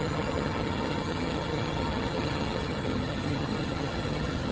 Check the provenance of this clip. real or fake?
fake